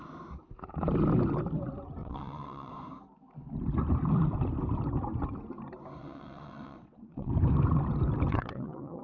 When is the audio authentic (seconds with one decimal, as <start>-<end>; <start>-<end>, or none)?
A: 0.0-2.0; 2.7-6.0; 7.3-8.3